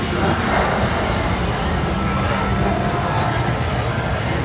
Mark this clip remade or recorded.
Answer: recorded